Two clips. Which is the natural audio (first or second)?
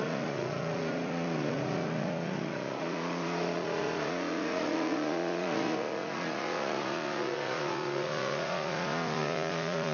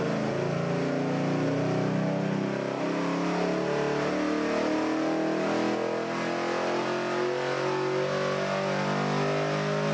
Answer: second